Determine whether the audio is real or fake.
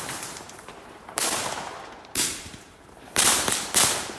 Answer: fake